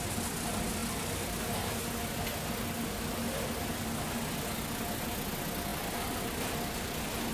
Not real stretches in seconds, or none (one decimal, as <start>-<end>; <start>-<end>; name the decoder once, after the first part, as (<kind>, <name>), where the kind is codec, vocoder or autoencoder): none